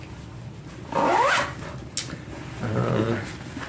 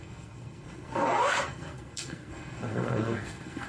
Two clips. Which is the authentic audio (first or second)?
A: first